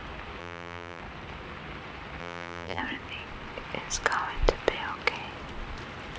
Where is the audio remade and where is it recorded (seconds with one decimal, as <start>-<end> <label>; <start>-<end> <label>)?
0.0-0.4 recorded; 0.4-1.0 remade; 1.0-2.2 recorded; 2.2-2.8 remade; 2.8-6.2 recorded